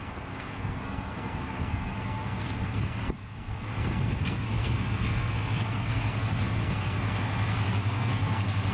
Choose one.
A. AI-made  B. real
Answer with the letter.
A